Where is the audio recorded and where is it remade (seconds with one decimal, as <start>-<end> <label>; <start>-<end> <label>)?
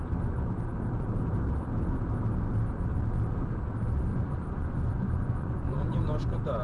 0.0-4.1 recorded; 4.1-6.0 remade; 6.0-6.6 recorded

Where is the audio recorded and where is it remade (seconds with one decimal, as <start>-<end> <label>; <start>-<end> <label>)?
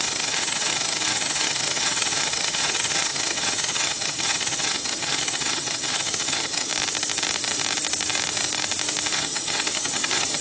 0.0-6.7 remade; 6.7-9.1 recorded; 9.1-10.4 remade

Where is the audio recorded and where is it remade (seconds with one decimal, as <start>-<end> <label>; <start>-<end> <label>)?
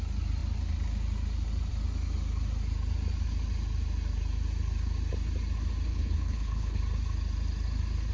0.0-5.9 recorded; 5.9-6.8 remade; 6.8-8.1 recorded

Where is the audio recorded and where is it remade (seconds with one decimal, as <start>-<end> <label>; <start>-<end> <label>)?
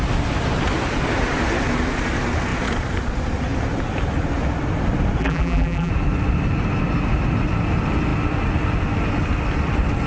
0.0-5.2 recorded; 5.2-5.9 remade; 5.9-10.1 recorded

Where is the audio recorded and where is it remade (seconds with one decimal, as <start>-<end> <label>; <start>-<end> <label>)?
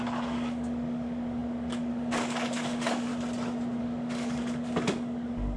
0.0-3.1 remade; 3.1-3.8 recorded; 3.8-5.6 remade